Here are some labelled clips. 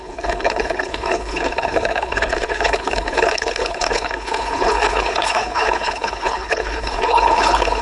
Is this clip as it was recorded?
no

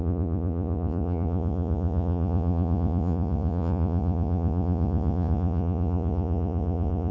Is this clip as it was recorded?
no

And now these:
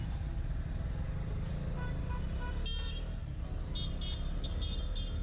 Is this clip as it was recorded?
yes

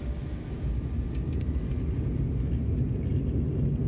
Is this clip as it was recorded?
yes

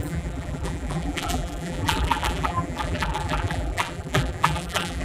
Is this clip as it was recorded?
no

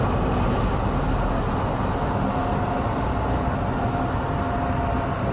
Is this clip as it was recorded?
yes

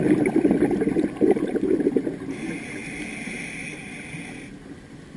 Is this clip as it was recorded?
yes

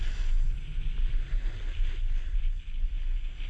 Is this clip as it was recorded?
yes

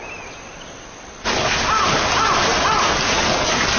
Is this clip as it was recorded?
yes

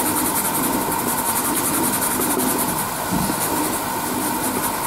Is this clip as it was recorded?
yes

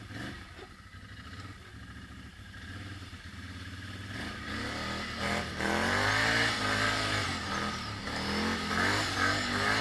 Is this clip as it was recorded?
yes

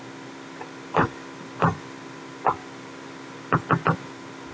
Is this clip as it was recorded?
yes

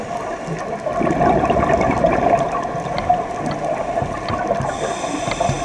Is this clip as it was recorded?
yes